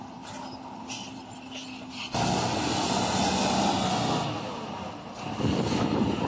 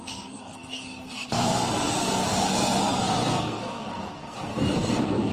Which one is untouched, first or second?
first